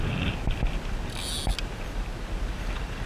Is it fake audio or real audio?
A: real